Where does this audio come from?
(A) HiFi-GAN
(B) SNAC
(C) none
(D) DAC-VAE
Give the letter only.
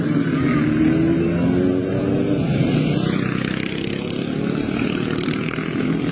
C